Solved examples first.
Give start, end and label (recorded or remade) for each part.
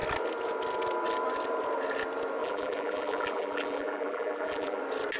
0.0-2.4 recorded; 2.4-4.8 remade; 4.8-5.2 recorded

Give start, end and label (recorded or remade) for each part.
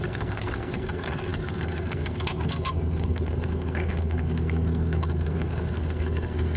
0.0-6.6 remade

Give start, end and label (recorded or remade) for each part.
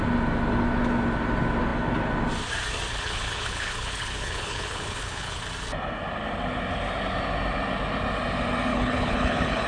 0.0-2.9 recorded; 2.9-5.4 remade; 5.4-8.7 recorded; 8.7-9.7 remade